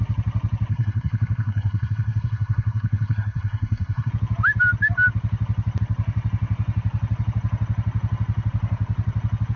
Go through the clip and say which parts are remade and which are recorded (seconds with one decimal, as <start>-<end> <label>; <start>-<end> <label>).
0.0-0.7 recorded; 0.7-4.1 remade; 4.1-9.6 recorded